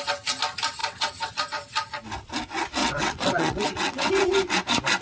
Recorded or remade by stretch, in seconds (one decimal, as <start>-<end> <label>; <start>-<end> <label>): 0.0-0.8 recorded; 0.8-1.3 remade; 1.3-2.8 recorded; 2.8-4.1 remade; 4.1-5.0 recorded